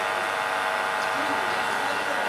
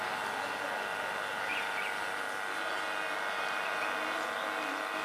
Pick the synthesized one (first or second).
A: second